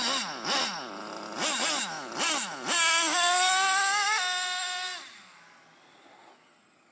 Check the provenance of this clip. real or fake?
real